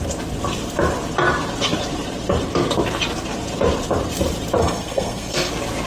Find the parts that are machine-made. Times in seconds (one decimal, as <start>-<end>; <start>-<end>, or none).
4.6-5.5